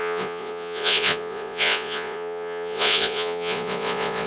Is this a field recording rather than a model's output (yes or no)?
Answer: no